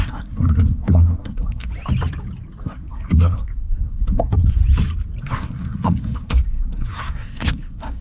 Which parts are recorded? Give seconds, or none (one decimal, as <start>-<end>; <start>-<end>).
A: 1.7-2.6; 4.6-5.2